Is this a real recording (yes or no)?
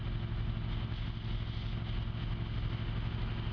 yes